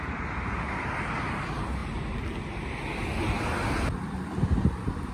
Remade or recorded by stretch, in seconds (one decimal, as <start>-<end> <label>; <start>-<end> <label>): 0.0-5.1 recorded